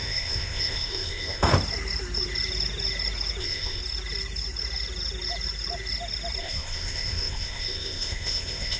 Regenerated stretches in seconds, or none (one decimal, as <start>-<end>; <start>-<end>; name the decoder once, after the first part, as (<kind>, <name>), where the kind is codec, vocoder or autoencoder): 0.0-1.5 (codec, ZipCodec); 3.4-3.8; 6.4-8.8